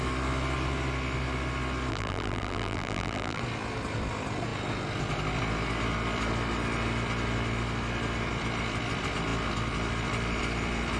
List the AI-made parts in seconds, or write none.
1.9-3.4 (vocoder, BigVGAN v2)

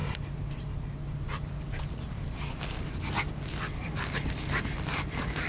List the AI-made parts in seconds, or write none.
none

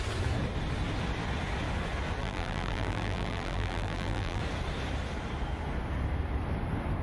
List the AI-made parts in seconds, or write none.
2.2-4.4 (vocoder, BigVGAN v2)

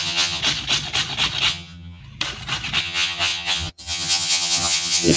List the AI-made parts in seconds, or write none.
0.0-0.4 (vocoder, HiFi-GAN); 1.5-2.0; 2.8-5.2